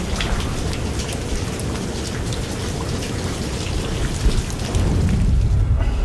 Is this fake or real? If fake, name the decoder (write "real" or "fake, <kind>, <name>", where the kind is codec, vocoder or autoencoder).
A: real